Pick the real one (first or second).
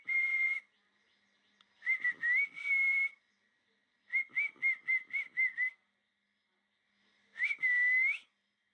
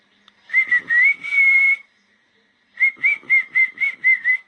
first